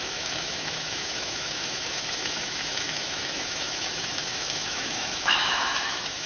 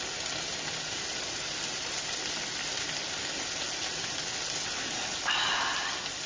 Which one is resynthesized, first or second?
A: first